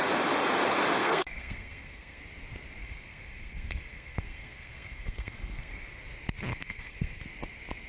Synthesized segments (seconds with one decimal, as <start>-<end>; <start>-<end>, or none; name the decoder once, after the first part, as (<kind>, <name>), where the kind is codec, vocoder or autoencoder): 1.0-2.2 (codec, SNAC); 2.8-5.9; 6.5-7.2